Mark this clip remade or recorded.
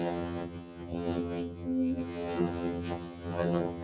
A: remade